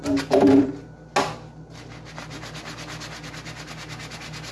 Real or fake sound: real